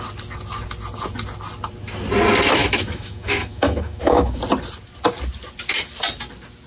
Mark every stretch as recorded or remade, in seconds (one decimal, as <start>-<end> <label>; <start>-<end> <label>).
0.0-2.6 recorded; 2.6-4.4 remade; 4.4-6.7 recorded

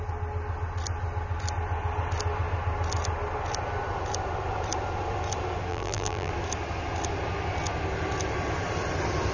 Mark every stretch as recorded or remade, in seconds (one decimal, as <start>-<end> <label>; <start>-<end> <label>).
0.0-5.7 recorded; 5.7-6.3 remade; 6.3-9.3 recorded

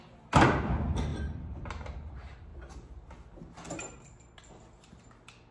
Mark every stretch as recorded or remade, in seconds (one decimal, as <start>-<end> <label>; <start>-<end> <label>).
0.0-5.5 recorded

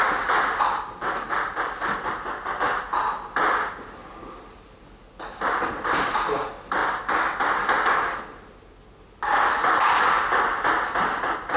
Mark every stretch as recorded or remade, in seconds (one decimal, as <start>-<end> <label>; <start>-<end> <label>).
0.0-11.6 recorded

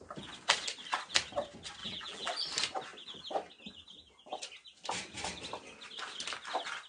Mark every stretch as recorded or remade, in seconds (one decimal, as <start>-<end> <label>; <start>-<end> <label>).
0.0-1.8 recorded; 1.8-2.3 remade; 2.3-6.9 recorded